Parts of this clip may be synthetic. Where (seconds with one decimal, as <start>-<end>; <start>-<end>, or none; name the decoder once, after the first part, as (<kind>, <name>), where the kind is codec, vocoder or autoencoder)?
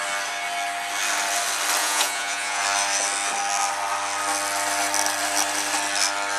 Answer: 1.8-2.6 (vocoder, Vocos)